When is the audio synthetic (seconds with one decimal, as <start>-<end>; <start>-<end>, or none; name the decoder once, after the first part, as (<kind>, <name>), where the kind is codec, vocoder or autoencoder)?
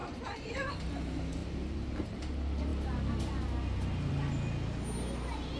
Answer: 0.0-0.7 (vocoder, BigVGAN v2); 1.4-2.2